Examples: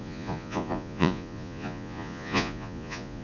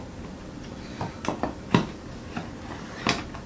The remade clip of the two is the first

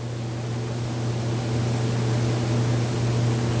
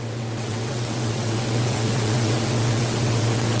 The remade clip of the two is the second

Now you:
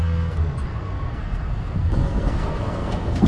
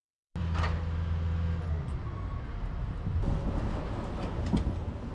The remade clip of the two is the first